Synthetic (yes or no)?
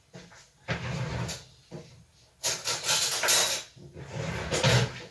no